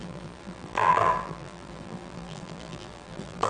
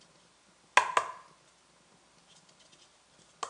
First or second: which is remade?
first